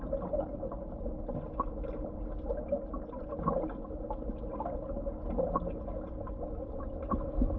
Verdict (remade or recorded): recorded